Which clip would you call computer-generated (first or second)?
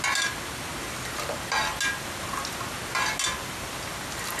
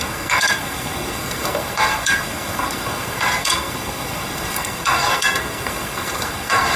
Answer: second